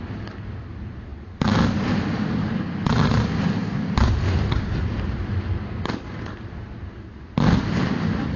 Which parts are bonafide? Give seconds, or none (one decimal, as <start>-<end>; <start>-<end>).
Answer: 0.0-8.4